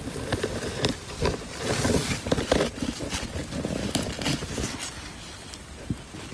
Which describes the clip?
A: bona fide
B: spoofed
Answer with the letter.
A